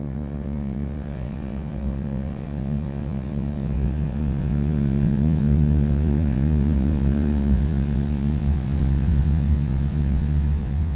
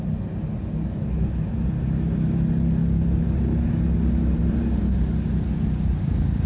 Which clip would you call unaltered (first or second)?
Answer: second